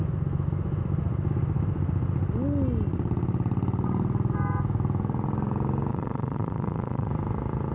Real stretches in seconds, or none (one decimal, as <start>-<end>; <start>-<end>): 0.0-5.9; 7.1-7.7